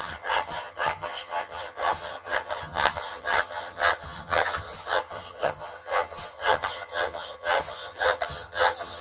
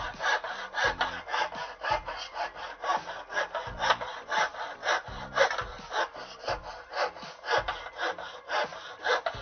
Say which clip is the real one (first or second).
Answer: second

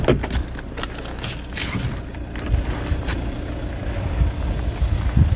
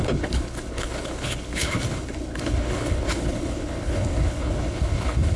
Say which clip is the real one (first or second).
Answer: first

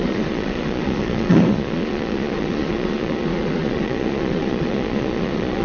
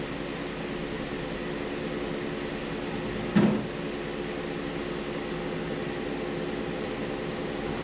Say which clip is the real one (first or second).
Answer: second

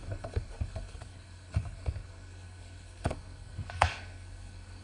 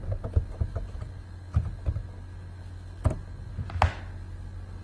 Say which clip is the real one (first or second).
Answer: second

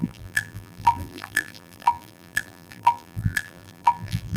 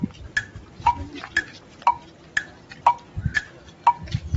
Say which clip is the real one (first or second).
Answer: second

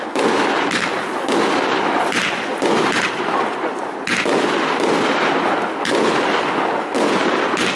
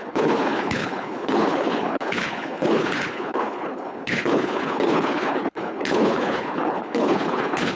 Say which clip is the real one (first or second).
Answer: first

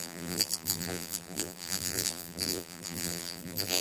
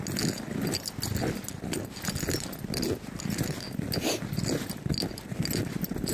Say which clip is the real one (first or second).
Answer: second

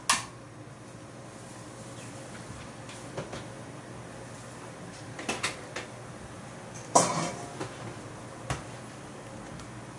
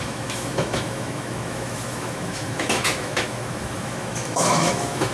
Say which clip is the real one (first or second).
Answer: first